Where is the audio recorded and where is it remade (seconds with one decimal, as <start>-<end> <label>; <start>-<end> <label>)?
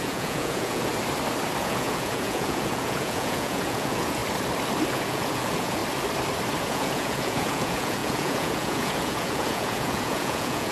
0.0-0.9 remade; 0.9-1.6 recorded; 1.6-4.2 remade; 4.2-4.9 recorded; 4.9-5.8 remade; 5.8-6.6 recorded; 6.6-10.7 remade